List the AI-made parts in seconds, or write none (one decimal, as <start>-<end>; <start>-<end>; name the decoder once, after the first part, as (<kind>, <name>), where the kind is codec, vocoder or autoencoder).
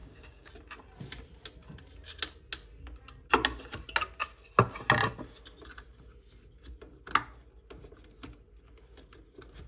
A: 0.0-0.5 (codec, DAC)